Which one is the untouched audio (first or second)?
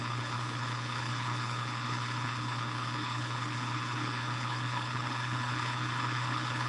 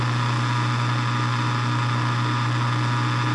second